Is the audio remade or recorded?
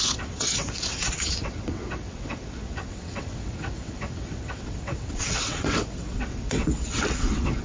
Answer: remade